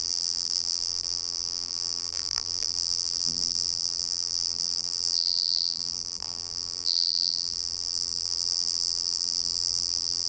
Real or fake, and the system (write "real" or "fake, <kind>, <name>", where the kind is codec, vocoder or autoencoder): fake, vocoder, BigVGAN v2